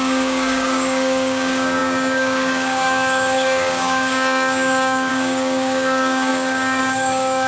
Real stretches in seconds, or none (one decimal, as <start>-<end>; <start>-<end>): none

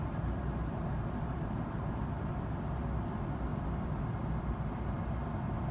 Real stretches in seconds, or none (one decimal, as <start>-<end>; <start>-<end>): 0.0-5.7

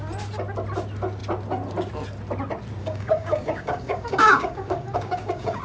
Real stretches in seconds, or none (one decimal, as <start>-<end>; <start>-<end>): 0.0-2.8

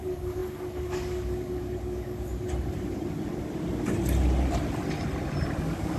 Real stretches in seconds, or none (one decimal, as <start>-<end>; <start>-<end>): 2.3-5.6

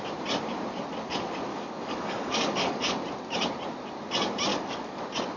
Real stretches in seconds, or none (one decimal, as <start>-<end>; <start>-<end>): 0.0-1.5; 2.9-4.5; 5.0-5.4

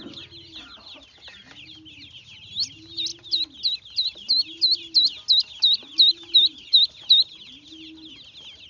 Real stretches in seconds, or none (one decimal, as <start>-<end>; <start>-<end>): 0.0-8.7

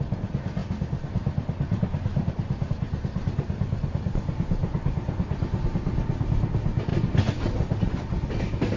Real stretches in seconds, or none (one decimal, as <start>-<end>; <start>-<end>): 0.0-8.8

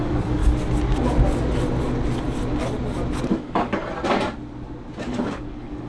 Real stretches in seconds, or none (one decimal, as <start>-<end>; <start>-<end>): 0.4-3.2; 3.8-5.0